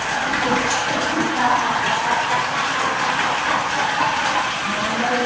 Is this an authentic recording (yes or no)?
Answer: yes